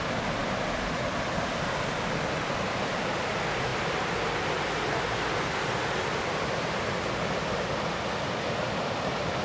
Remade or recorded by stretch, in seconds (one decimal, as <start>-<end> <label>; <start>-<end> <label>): 0.0-9.4 recorded